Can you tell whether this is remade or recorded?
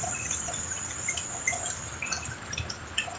recorded